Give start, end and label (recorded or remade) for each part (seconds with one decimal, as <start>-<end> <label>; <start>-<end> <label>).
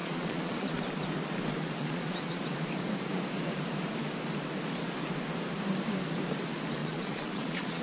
0.0-0.8 remade; 0.8-1.8 recorded; 1.8-2.4 remade; 2.4-6.8 recorded; 6.8-7.8 remade